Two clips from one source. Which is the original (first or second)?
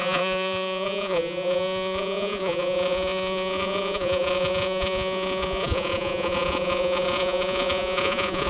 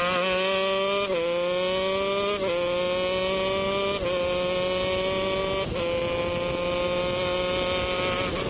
second